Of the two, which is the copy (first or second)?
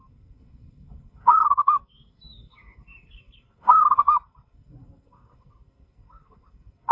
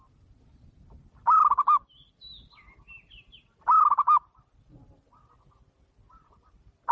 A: first